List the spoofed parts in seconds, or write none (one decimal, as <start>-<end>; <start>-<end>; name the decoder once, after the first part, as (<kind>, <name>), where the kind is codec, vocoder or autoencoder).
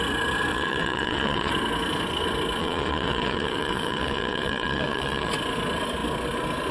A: 0.5-1.5 (vocoder, WaveNeXt); 2.6-5.3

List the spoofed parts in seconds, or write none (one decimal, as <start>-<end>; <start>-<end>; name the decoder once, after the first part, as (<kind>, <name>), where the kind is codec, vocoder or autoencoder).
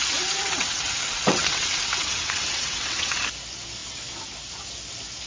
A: 0.0-3.2 (vocoder, WaveNeXt)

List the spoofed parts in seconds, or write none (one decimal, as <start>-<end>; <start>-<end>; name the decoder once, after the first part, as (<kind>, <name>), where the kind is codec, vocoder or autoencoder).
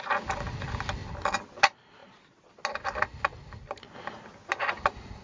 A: none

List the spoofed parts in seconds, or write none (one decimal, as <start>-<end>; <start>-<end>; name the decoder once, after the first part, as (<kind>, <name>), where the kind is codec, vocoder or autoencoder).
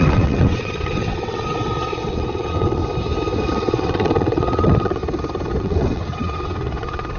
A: 0.0-2.8 (vocoder, WaveNeXt); 3.5-5.0; 5.6-7.2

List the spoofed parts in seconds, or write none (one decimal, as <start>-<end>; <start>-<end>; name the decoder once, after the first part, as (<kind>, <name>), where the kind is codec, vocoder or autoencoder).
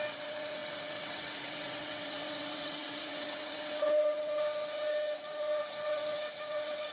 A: 0.0-6.9 (vocoder, WaveNeXt)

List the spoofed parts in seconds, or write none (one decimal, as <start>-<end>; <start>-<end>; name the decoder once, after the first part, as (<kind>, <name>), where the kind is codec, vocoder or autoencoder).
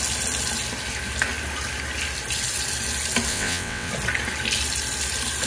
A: 3.3-3.9 (vocoder, WaveNeXt)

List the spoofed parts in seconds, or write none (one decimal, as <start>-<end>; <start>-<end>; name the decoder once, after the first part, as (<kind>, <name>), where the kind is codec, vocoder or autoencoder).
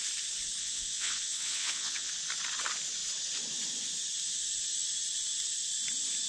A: 0.6-2.1 (vocoder, WaveNeXt)